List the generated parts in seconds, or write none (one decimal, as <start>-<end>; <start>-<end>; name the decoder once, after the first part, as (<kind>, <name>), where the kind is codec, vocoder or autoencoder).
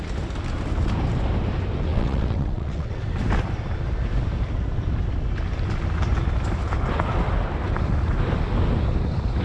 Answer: 1.9-3.0 (vocoder, WaveNeXt)